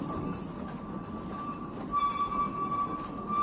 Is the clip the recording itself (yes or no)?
yes